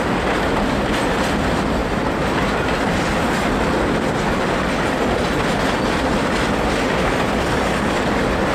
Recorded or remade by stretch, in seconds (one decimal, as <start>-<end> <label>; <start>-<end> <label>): 0.0-8.5 recorded